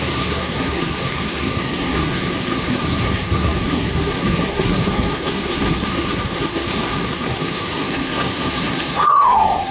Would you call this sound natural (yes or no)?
no